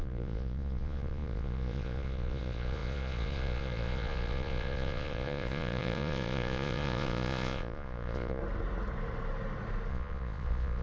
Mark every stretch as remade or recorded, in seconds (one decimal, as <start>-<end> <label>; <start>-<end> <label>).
0.0-8.4 remade; 8.4-9.9 recorded; 9.9-10.8 remade